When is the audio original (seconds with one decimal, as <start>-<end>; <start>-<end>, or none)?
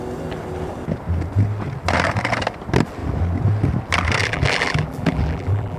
0.0-4.2